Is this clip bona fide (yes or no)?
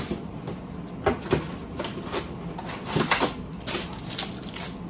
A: yes